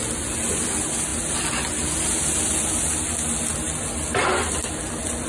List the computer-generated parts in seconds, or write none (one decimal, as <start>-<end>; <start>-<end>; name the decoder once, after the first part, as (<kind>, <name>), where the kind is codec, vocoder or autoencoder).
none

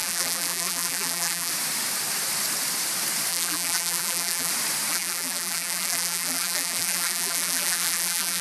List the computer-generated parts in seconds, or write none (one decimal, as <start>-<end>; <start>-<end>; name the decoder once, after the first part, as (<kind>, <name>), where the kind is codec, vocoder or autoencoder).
0.0-1.5 (vocoder, BigVGAN v2); 3.3-4.5; 4.9-8.4

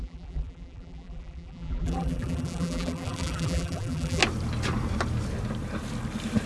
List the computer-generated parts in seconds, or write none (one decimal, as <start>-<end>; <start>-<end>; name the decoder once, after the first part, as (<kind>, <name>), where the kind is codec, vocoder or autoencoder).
0.0-4.2 (vocoder, BigVGAN v2)